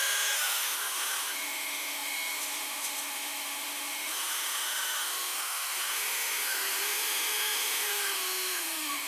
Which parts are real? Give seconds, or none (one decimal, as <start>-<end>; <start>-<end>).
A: none